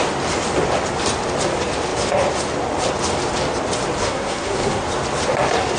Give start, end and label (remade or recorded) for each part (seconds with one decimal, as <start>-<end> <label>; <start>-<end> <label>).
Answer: 0.0-4.0 recorded; 4.0-4.8 remade; 4.8-5.8 recorded